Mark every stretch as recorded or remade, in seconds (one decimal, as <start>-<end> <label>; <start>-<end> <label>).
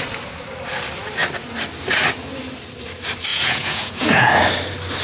0.0-3.3 recorded; 3.3-4.3 remade; 4.3-5.0 recorded